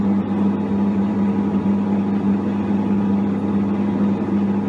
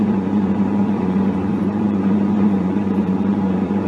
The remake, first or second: second